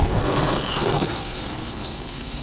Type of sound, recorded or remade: remade